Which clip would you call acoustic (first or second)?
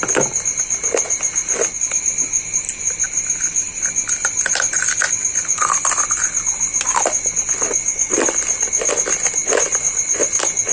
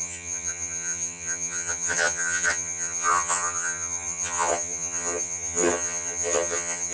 first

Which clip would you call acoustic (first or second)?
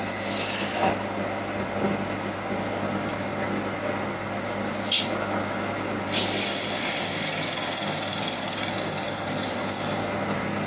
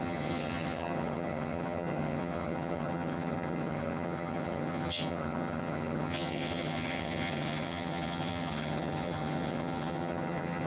first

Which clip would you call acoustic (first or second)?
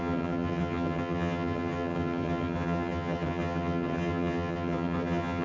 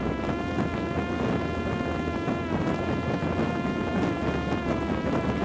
second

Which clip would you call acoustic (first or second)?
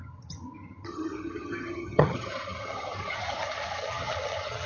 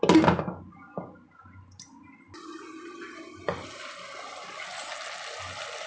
second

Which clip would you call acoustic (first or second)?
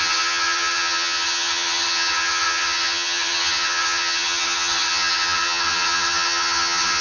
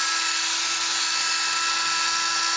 second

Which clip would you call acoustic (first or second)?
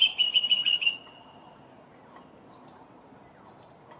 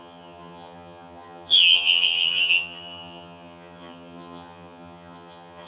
first